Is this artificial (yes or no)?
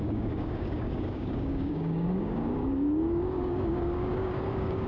yes